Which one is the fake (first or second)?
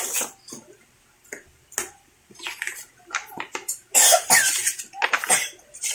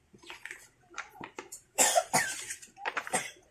second